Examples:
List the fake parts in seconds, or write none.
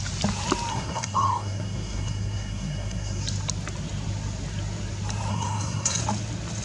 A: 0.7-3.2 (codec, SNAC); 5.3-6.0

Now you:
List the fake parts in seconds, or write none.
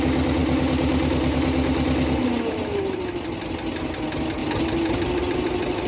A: none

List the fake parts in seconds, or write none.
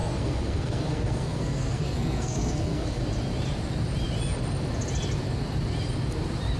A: 0.0-3.0 (codec, SNAC)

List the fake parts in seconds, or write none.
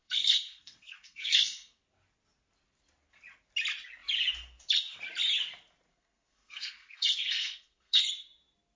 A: 0.0-1.8 (codec, SNAC); 5.9-8.0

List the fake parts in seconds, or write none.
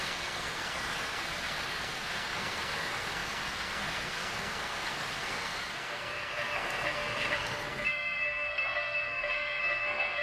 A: 0.0-10.2 (codec, SNAC)